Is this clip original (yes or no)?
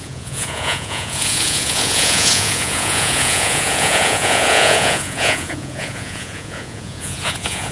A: no